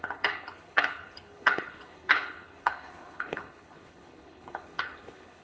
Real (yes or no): no